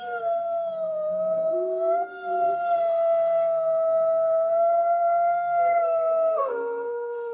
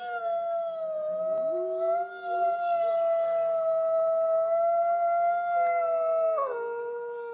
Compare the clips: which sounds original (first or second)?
second